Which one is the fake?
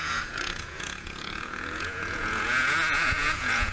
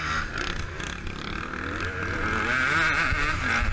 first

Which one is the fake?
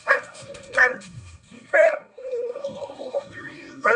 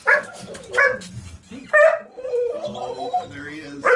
first